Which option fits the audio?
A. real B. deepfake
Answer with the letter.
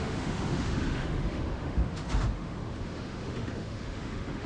B